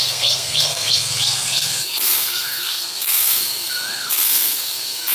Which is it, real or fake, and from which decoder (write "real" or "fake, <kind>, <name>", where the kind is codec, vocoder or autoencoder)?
fake, codec, SNAC